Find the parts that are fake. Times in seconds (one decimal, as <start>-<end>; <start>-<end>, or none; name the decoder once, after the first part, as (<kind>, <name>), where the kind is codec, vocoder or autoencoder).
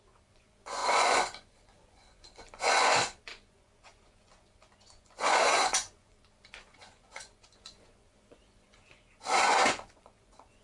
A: 0.0-10.6 (vocoder, Vocos)